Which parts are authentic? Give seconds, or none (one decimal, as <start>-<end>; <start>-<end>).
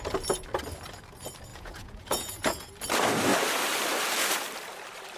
0.0-1.5; 2.7-5.2